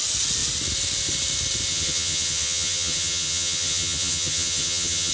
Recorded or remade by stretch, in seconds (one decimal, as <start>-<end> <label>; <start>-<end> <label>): 0.0-1.7 recorded; 1.7-5.1 remade